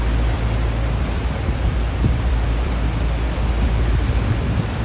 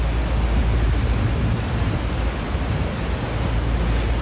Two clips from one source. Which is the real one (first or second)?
second